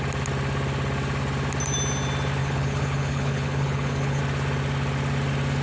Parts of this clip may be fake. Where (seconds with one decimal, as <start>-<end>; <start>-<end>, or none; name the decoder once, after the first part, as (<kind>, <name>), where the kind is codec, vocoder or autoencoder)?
2.4-4.2 (codec, HILCodec)

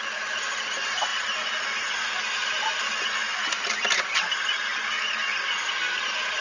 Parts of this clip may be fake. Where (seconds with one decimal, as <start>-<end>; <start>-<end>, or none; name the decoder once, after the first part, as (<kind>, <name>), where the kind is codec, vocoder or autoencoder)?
none